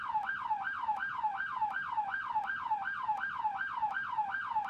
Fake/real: real